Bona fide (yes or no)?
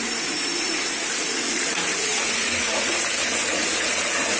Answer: no